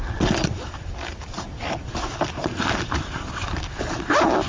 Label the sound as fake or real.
fake